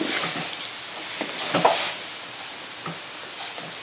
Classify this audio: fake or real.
real